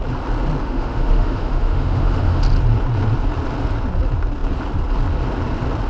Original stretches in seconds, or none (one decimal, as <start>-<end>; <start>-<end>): 0.0-0.6; 2.4-5.9